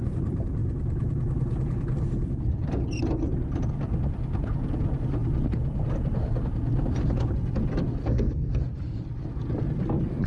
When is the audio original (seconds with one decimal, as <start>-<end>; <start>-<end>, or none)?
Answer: 0.0-8.0; 8.6-10.3